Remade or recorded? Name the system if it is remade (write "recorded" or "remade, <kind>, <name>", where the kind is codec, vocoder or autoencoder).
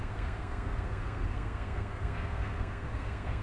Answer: remade, codec, SNAC